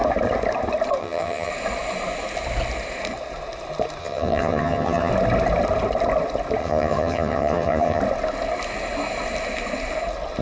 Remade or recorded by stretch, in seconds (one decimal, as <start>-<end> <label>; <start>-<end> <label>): 0.0-1.0 recorded; 1.0-1.5 remade; 1.5-4.0 recorded; 4.0-5.1 remade; 5.1-6.6 recorded; 6.6-8.0 remade; 8.0-10.4 recorded